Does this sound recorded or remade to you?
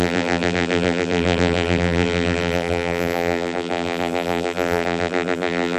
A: remade